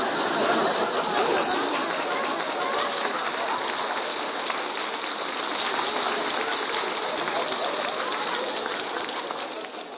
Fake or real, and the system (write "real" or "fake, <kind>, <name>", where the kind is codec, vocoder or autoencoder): real